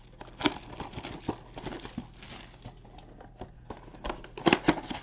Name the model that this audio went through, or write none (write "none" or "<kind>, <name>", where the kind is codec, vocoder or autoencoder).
none